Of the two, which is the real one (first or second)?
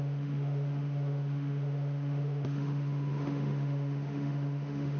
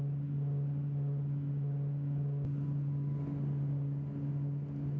second